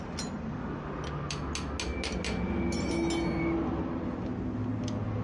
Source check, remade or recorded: recorded